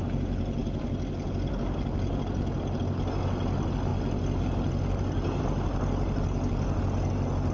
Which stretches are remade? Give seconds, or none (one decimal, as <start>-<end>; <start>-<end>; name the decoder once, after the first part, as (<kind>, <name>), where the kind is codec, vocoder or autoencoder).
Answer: none